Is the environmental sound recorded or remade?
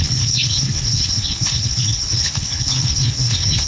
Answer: remade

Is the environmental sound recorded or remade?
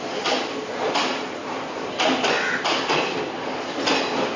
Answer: recorded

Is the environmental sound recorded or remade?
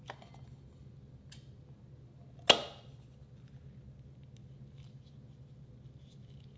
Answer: recorded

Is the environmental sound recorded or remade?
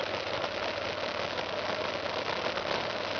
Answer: recorded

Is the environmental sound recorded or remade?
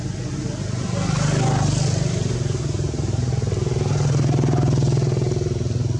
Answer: recorded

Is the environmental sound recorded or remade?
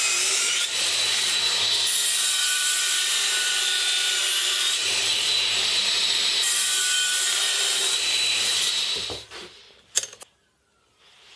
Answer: remade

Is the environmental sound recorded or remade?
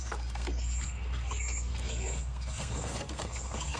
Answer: remade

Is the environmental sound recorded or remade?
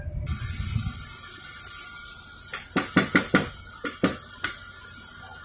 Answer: recorded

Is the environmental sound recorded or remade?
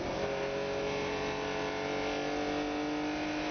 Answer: recorded